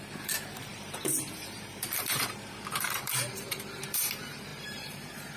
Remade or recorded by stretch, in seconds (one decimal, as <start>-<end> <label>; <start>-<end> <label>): 0.0-5.4 remade